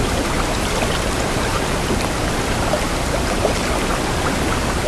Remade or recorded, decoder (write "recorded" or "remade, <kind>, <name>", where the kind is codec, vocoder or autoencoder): recorded